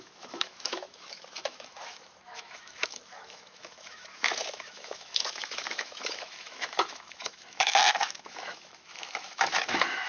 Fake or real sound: fake